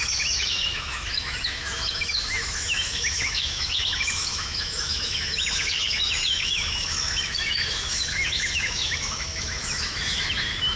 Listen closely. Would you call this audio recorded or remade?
remade